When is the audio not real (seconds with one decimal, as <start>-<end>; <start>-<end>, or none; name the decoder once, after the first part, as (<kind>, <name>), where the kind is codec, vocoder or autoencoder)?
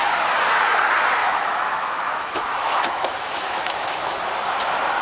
1.2-4.2 (autoencoder, DAC-VAE)